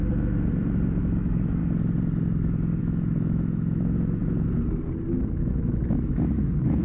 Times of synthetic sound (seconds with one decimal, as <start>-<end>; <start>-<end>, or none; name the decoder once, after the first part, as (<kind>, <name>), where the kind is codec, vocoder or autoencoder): 1.0-1.6 (autoencoder, DAC-VAE); 2.8-4.2; 5.1-6.8